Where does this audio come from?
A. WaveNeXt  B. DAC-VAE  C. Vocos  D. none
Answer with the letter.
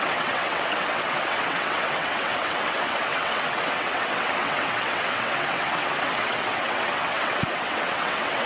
A